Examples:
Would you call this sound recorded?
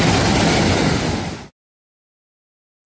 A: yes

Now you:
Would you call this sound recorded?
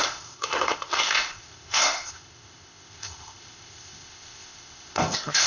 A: no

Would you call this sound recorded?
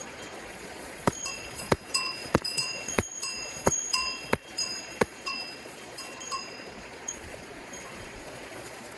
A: no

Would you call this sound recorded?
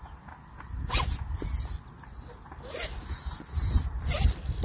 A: yes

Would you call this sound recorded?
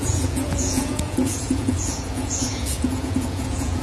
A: no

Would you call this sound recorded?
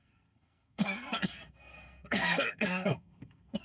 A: no